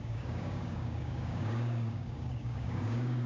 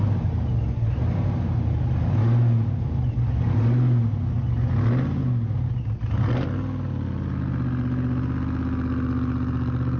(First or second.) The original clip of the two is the second